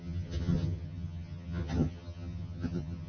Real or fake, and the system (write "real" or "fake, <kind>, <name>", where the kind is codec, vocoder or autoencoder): fake, vocoder, HiFi-GAN